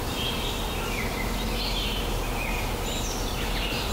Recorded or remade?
remade